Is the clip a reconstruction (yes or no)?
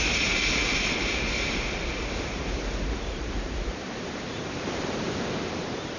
yes